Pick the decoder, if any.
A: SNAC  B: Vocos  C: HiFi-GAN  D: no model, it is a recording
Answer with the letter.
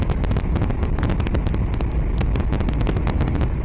D